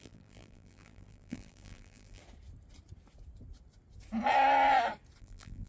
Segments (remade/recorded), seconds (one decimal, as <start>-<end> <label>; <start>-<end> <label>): 0.0-2.2 remade; 2.2-5.2 recorded; 5.2-5.7 remade